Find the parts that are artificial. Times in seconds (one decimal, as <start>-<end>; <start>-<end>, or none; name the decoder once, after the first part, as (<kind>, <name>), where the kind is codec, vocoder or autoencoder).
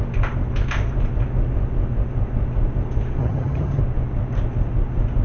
3.2-3.8 (vocoder, HiFi-GAN)